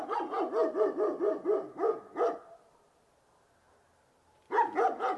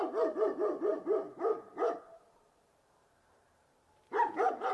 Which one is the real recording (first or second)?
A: first